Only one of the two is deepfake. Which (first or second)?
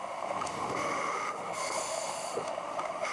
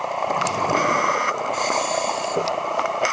first